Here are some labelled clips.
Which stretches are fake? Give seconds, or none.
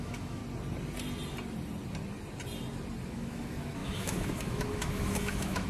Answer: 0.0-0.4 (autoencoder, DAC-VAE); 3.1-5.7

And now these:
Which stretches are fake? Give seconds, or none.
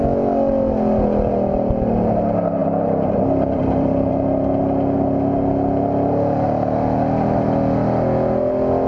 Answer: 2.6-4.1 (vocoder, BigVGAN v2)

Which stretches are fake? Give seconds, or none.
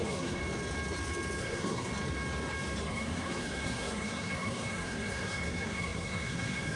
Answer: 0.0-0.4 (codec, SNAC); 1.4-1.9; 2.8-6.8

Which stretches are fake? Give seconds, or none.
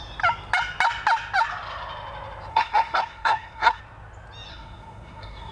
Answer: 2.5-3.8 (codec, SNAC); 4.5-5.5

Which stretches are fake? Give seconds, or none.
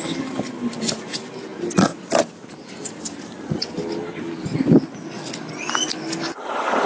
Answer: none